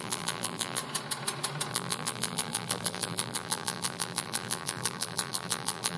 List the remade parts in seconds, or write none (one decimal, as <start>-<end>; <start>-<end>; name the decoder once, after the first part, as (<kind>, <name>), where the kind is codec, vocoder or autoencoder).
0.0-0.8 (vocoder, BigVGAN v2); 1.7-6.0